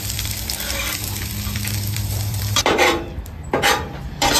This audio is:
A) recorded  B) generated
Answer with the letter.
B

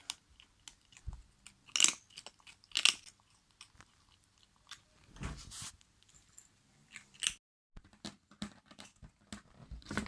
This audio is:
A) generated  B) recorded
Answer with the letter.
B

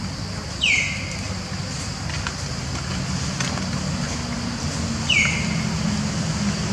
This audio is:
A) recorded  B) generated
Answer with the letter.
A